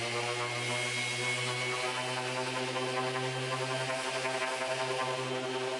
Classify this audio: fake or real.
real